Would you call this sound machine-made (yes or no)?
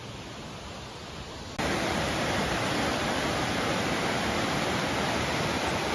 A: no